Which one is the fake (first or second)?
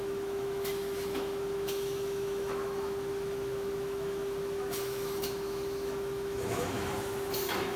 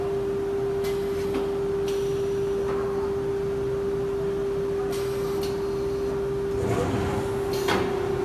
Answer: first